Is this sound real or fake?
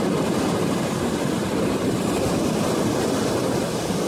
real